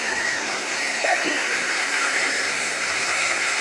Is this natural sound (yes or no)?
no